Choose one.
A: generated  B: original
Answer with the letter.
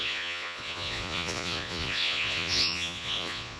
A